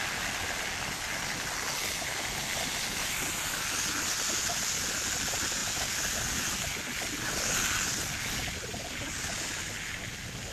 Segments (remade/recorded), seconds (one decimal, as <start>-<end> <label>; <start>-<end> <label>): 0.0-10.5 recorded